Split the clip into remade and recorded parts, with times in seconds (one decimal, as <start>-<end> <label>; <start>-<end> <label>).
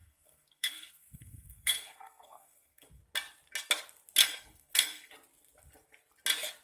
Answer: 0.0-3.0 remade; 3.0-4.2 recorded; 4.2-5.1 remade; 5.1-6.6 recorded